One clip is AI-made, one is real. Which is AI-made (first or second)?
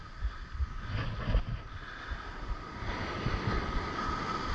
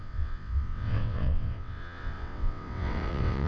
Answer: second